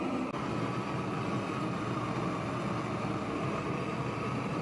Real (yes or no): yes